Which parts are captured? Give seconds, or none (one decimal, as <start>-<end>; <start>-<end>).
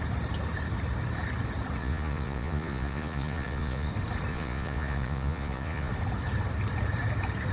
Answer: 0.0-1.8; 3.9-4.3; 5.9-7.5